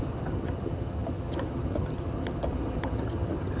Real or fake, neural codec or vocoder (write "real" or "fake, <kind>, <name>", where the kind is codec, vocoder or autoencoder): fake, vocoder, HiFi-GAN